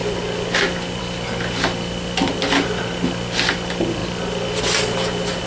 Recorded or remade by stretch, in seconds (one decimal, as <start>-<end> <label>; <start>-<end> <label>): 0.0-5.5 recorded